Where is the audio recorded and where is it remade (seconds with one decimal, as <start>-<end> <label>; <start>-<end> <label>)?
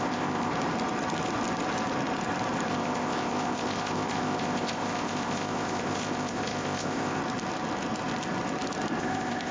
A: 0.0-0.5 remade; 0.5-2.7 recorded; 2.7-7.2 remade; 7.2-9.0 recorded; 9.0-9.5 remade